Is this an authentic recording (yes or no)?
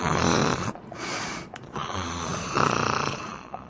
no